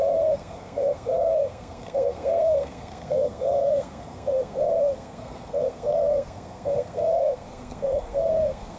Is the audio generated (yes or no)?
yes